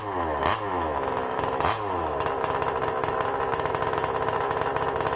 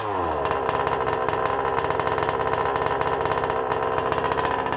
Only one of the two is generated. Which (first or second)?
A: first